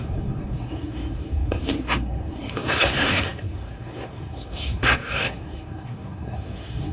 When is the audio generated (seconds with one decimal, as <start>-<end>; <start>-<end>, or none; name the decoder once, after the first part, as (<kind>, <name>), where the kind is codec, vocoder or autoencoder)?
0.0-6.9 (codec, SNAC)